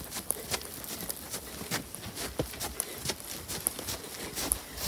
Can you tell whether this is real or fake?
real